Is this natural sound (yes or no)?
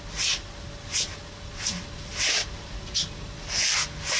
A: yes